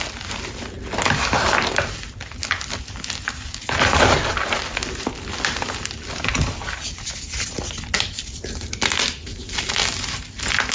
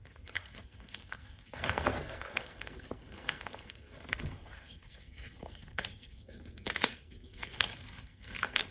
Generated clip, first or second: second